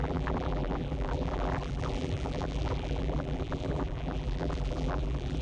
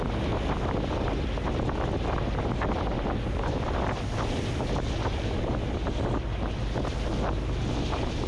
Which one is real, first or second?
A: second